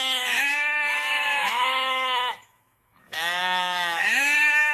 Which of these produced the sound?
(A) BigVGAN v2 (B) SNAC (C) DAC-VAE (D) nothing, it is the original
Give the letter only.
C